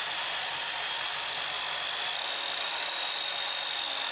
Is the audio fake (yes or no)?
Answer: no